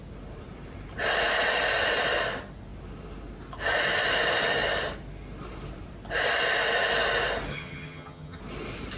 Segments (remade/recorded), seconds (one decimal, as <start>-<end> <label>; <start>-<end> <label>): 0.0-7.5 recorded; 7.5-8.4 remade; 8.4-9.0 recorded